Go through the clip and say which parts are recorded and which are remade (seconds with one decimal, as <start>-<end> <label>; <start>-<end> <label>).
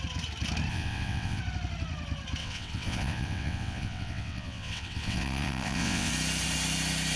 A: 0.0-0.7 recorded; 0.7-1.4 remade; 1.4-2.4 recorded; 2.4-6.1 remade; 6.1-7.2 recorded